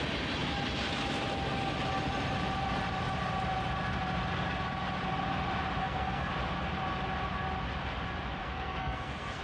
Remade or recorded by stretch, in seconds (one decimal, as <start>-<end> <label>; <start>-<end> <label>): 0.0-5.8 recorded; 5.8-6.3 remade; 6.3-8.4 recorded; 8.4-9.4 remade